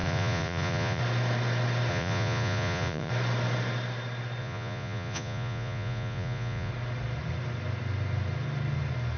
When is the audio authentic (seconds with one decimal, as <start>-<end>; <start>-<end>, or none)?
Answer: 1.0-1.9; 3.1-4.4; 6.7-9.2